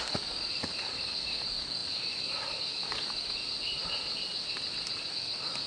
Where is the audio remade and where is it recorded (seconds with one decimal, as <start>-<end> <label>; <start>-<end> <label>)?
0.0-3.4 remade; 3.4-5.1 recorded; 5.1-5.7 remade